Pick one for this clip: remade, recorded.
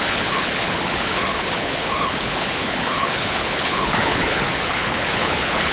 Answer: remade